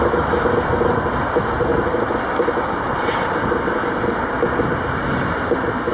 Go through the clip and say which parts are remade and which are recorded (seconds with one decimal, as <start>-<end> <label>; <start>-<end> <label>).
0.0-5.9 recorded